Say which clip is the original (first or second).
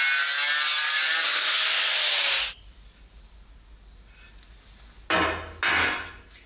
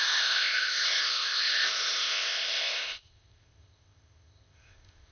first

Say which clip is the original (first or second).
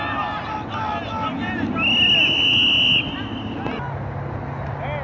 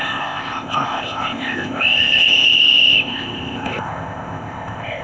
first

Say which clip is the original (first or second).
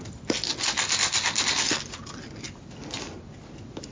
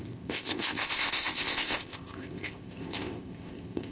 first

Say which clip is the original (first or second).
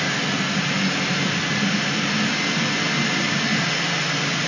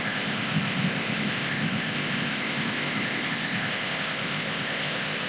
first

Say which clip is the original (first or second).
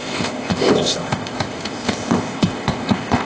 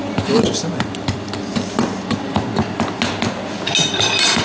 second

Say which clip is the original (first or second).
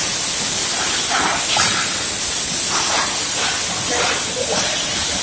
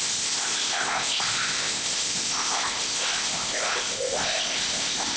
first